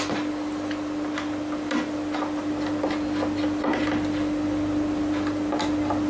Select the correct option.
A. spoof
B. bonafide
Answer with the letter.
B